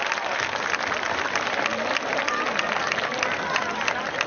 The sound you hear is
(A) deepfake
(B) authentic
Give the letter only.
B